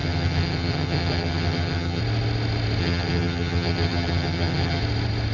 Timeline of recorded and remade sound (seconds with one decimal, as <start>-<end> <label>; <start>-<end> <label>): 0.0-2.0 remade; 2.0-2.8 recorded; 2.8-4.8 remade; 4.8-5.3 recorded